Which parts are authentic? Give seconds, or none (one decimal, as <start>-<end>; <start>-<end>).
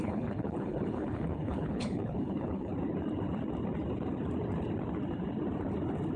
2.7-6.2